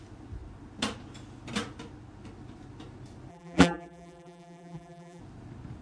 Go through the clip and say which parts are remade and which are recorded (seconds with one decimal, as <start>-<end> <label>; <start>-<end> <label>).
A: 0.0-3.3 recorded; 3.3-5.2 remade; 5.2-5.8 recorded